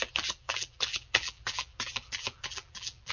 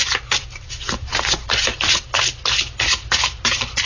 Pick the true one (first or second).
second